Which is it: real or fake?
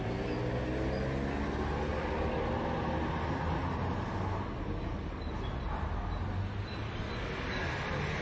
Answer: real